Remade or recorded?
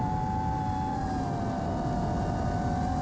recorded